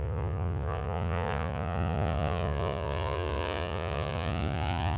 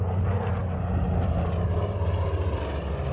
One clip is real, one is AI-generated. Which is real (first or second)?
second